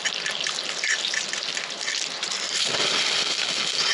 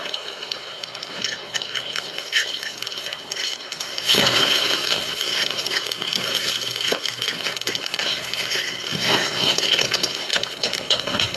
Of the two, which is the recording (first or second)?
first